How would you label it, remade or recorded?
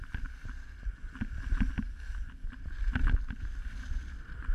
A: recorded